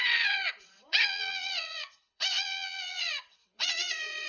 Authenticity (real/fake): fake